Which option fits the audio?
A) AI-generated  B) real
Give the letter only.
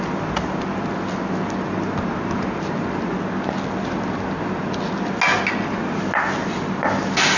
B